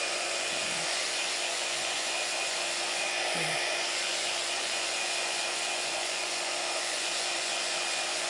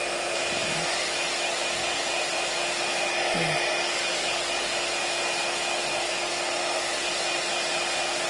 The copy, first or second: first